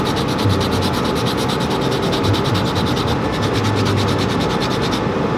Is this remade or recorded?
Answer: recorded